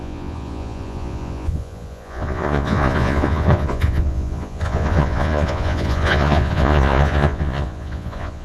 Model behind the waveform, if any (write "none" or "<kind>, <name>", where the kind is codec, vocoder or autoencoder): vocoder, Vocos